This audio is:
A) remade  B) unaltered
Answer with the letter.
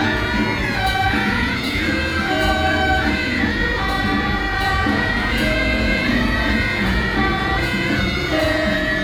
A